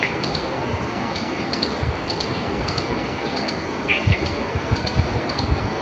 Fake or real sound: fake